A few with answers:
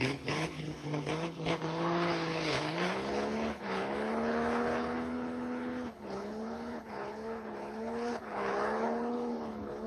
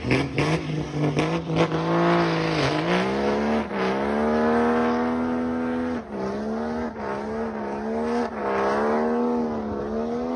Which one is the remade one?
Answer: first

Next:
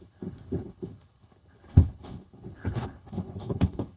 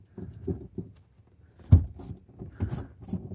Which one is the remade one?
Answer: first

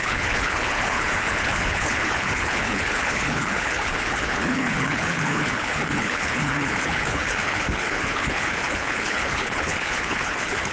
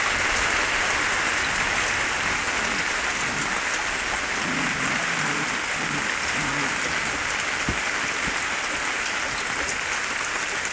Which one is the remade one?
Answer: first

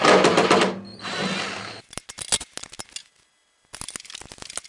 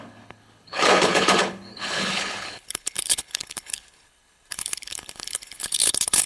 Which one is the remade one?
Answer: second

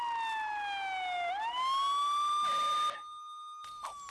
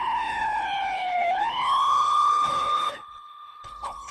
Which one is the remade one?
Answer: second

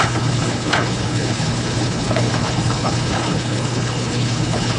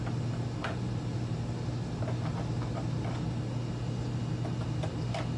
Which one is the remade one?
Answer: first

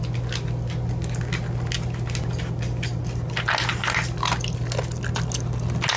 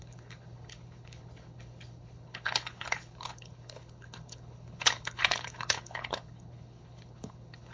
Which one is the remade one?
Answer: second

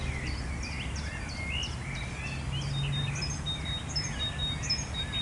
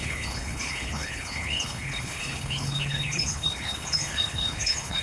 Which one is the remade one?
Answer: second